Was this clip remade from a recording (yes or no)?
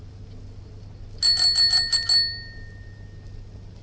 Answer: no